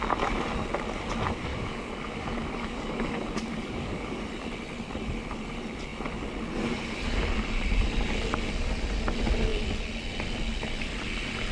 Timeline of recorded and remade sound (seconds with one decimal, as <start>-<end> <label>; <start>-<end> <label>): 0.0-1.5 recorded; 1.5-4.2 remade; 4.2-11.5 recorded